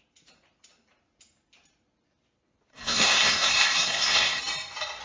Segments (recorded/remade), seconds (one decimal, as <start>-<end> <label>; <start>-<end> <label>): 0.0-2.7 recorded; 2.7-4.4 remade; 4.4-5.0 recorded